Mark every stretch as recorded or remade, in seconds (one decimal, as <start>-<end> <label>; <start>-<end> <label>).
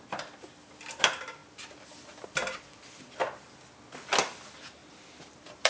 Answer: 0.0-4.8 recorded; 4.8-5.7 remade